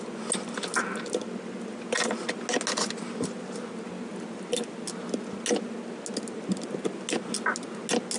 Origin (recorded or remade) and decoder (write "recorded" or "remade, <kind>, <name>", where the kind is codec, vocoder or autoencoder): recorded